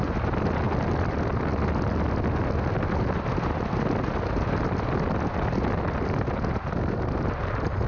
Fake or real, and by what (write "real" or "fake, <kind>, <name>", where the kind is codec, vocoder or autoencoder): real